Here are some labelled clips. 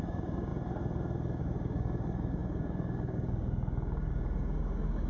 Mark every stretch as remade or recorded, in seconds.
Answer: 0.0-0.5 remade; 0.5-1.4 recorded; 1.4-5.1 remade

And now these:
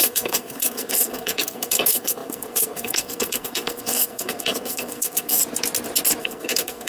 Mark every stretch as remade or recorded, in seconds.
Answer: 0.0-5.4 remade; 5.4-6.2 recorded; 6.2-6.9 remade

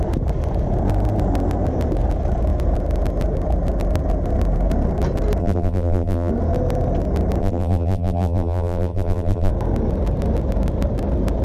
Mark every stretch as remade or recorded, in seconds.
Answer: 0.0-5.4 recorded; 5.4-6.3 remade; 6.3-7.4 recorded; 7.4-9.5 remade; 9.5-11.4 recorded

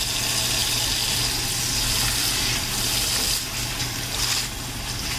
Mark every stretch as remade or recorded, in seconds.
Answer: 0.0-5.2 recorded

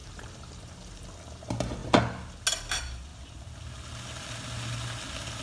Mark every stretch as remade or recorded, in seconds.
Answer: 0.0-1.0 remade; 1.0-5.4 recorded

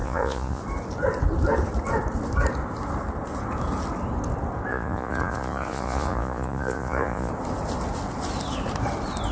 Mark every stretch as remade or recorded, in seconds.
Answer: 0.0-0.6 remade; 0.6-4.7 recorded; 4.7-7.3 remade; 7.3-9.3 recorded

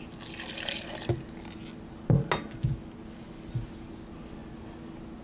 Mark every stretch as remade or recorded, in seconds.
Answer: 0.0-5.2 recorded

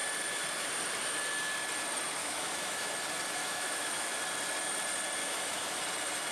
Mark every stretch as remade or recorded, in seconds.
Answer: 0.0-2.2 recorded; 2.2-2.9 remade; 2.9-3.4 recorded; 3.4-4.2 remade; 4.2-5.2 recorded; 5.2-5.8 remade; 5.8-6.3 recorded